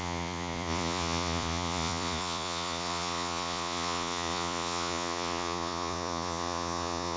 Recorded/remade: remade